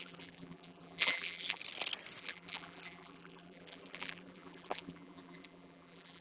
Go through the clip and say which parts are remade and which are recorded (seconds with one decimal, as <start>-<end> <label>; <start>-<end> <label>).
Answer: 0.0-1.6 remade; 1.6-2.2 recorded; 2.2-6.2 remade